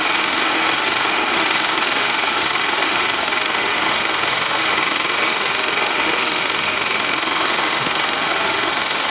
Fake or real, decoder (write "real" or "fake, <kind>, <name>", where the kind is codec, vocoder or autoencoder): fake, autoencoder, DAC-VAE